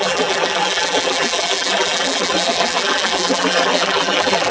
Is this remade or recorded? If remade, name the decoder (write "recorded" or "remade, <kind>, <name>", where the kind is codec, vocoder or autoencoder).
remade, vocoder, BigVGAN v2